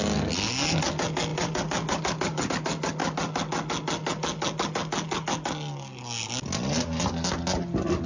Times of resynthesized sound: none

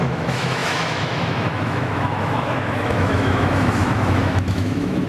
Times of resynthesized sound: 0.0-5.1 (autoencoder, DAC-VAE)

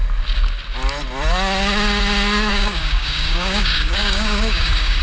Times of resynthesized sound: 2.5-5.0 (codec, DAC)